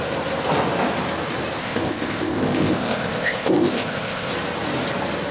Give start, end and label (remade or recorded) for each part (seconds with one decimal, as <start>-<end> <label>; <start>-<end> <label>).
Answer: 0.0-1.6 recorded; 1.6-4.3 remade; 4.3-5.3 recorded